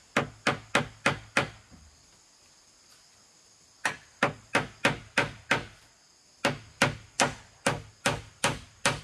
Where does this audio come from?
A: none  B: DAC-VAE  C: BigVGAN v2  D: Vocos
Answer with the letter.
A